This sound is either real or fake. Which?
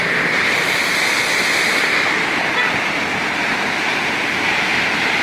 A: real